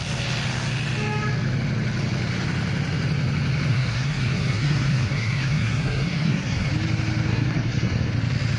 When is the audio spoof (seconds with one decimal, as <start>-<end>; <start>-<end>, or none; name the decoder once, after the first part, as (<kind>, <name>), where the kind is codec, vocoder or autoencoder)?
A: 3.7-6.7 (codec, SNAC); 7.3-8.1